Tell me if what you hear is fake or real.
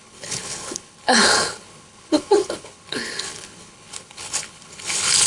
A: fake